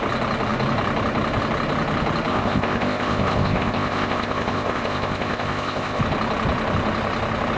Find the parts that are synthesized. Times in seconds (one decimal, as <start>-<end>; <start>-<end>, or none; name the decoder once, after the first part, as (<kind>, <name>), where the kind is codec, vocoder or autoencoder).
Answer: 2.3-6.0 (codec, ZipCodec)